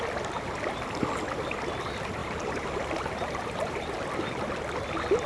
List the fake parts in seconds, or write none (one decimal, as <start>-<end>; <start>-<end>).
2.2-3.9